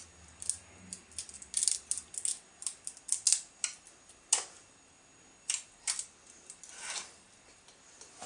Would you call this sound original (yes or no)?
yes